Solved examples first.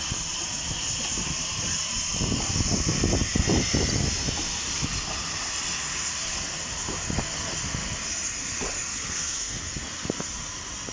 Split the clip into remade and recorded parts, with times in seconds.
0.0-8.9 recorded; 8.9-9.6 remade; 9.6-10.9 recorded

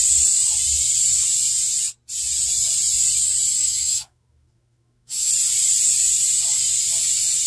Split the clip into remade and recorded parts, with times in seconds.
0.0-3.6 recorded; 3.6-5.3 remade; 5.3-7.5 recorded

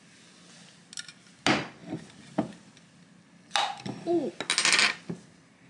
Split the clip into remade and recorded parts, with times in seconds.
0.0-5.7 recorded

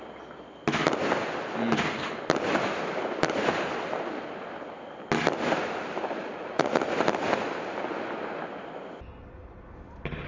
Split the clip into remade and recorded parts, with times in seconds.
0.0-6.2 recorded; 6.2-6.8 remade; 6.8-10.3 recorded

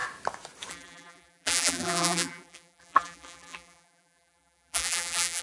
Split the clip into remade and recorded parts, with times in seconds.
0.0-0.7 recorded; 0.7-5.4 remade

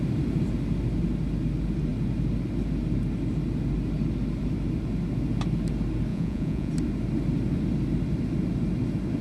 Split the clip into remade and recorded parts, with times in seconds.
0.0-6.1 recorded; 6.1-6.7 remade; 6.7-9.2 recorded

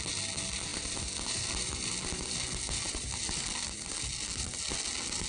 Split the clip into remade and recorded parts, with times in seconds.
0.0-0.7 recorded; 0.7-3.9 remade; 3.9-5.3 recorded